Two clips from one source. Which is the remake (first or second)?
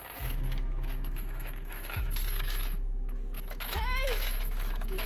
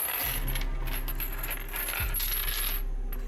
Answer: first